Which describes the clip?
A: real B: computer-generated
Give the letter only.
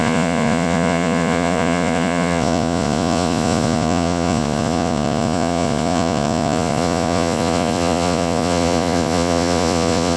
B